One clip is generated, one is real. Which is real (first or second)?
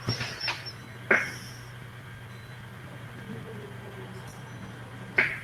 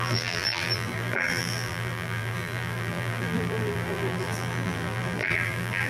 first